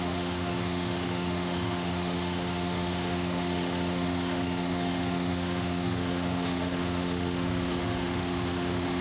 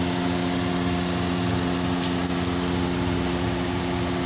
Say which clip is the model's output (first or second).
first